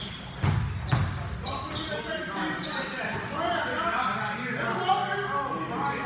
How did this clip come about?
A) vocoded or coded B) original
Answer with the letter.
B